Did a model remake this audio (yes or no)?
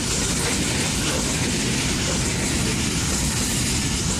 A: no